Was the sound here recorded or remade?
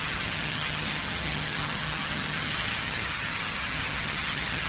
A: remade